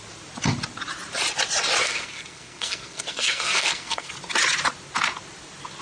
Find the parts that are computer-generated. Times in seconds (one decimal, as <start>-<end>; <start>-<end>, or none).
1.8-4.1